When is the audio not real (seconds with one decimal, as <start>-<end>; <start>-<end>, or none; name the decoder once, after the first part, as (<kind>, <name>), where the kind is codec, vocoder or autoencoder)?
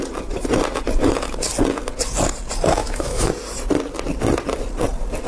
2.8-3.3 (autoencoder, DAC-VAE)